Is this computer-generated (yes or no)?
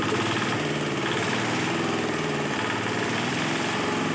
yes